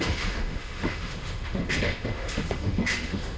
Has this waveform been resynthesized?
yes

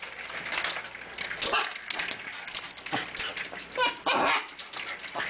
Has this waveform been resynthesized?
no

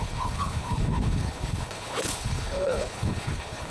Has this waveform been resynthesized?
yes